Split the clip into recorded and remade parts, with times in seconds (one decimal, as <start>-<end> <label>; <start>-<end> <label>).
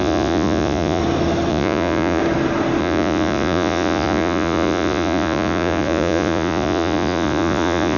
0.0-1.0 remade; 1.0-1.5 recorded; 1.5-2.2 remade; 2.2-2.8 recorded; 2.8-8.0 remade